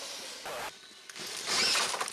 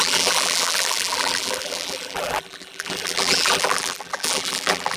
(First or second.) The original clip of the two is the first